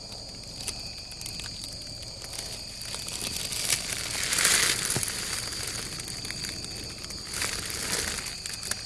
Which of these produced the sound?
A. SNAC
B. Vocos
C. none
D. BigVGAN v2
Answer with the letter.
C